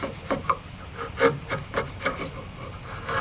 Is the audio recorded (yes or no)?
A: yes